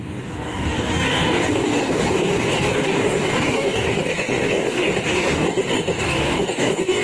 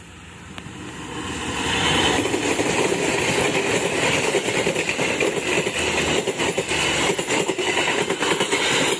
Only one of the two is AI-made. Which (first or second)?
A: first